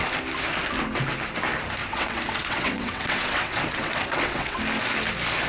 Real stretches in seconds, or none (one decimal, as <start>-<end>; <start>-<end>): 0.0-1.8; 4.6-5.5